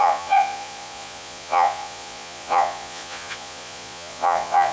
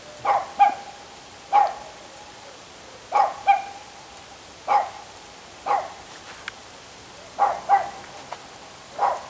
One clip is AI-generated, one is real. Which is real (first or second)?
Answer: second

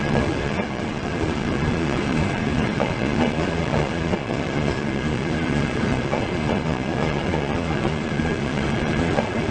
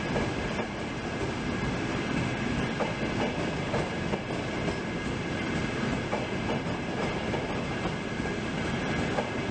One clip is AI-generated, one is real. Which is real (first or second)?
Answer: second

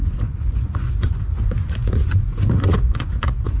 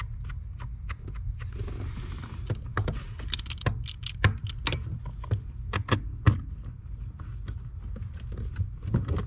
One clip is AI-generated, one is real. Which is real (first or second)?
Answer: second